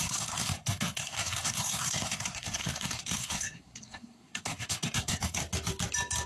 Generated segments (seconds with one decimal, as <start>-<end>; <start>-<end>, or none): 0.0-5.4